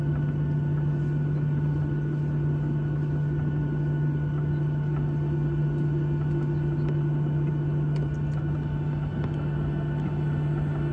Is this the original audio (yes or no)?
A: yes